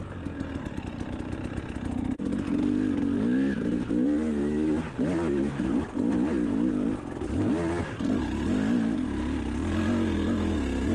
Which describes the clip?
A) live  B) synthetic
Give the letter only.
A